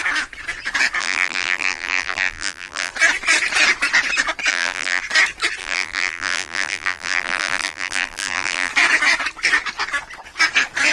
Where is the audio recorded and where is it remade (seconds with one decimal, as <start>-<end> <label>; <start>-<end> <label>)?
0.0-1.0 recorded; 1.0-2.9 remade; 2.9-4.5 recorded; 4.5-5.0 remade; 5.0-5.6 recorded; 5.6-8.7 remade; 8.7-10.9 recorded